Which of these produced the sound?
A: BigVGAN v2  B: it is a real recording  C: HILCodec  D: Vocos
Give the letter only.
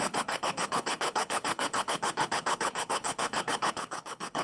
C